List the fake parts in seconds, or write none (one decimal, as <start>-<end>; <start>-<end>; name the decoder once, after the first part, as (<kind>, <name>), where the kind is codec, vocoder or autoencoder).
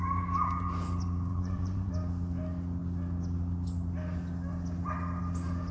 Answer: 1.3-1.9 (vocoder, Vocos)